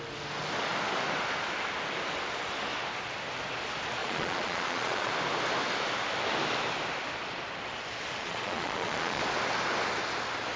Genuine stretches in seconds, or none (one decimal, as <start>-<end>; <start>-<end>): 0.0-4.0; 5.1-8.2; 9.2-10.6